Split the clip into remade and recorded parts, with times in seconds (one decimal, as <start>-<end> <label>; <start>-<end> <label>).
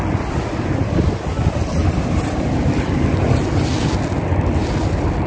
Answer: 0.0-1.8 recorded; 1.8-3.8 remade; 3.8-4.6 recorded; 4.6-5.3 remade